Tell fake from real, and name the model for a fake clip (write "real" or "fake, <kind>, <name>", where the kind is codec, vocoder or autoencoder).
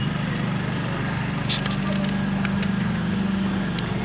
real